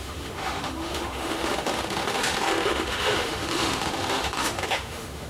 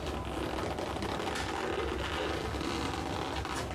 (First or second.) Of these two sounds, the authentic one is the second